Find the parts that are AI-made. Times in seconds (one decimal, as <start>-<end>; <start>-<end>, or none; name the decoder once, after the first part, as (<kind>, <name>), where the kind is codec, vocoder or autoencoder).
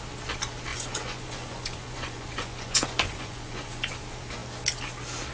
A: 0.7-3.9 (vocoder, Vocos)